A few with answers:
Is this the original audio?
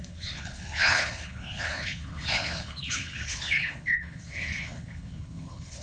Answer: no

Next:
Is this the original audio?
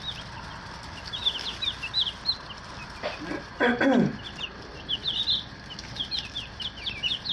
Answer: yes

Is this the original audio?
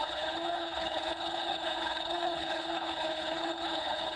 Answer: no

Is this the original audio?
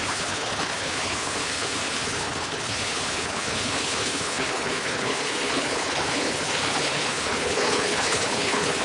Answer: no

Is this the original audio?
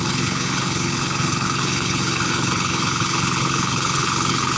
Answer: no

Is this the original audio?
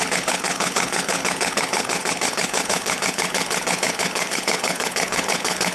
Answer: no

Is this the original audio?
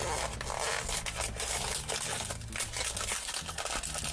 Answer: yes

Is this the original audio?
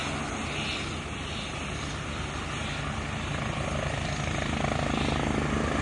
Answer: yes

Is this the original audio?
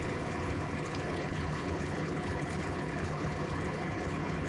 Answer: no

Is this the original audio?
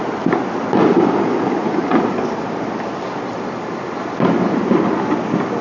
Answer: yes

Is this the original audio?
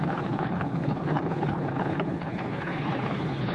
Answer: no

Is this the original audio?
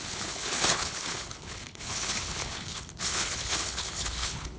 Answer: no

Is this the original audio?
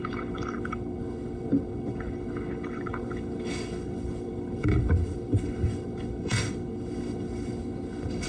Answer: no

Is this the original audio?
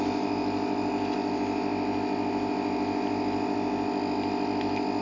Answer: yes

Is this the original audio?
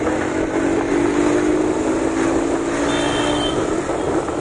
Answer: yes